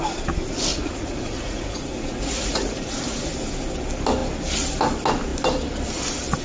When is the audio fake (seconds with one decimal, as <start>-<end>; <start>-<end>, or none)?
0.7-3.3